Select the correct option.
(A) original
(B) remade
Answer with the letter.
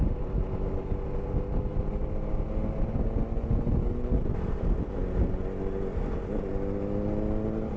A